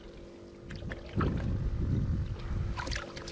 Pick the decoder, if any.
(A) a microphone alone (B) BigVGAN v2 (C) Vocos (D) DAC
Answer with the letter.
A